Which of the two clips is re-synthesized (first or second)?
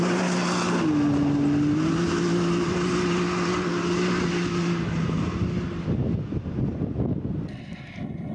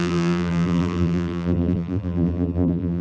second